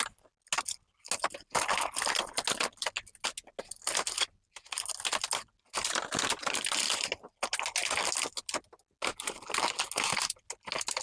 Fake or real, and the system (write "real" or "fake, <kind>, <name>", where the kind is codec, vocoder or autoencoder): real